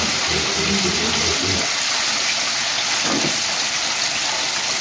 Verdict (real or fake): real